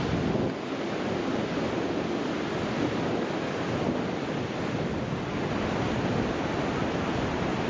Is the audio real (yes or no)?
yes